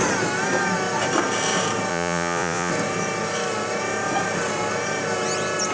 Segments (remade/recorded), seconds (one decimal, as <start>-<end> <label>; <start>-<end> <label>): 0.0-1.9 recorded; 1.9-2.7 remade; 2.7-5.7 recorded